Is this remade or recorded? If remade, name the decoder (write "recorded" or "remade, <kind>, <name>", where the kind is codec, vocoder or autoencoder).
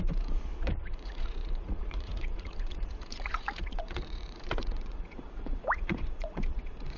remade, vocoder, Vocos